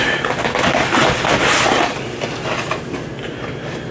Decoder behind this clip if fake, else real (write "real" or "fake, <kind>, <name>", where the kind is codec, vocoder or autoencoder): real